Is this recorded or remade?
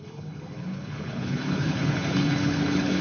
remade